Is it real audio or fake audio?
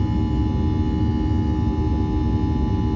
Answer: real